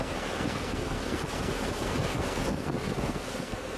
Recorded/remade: remade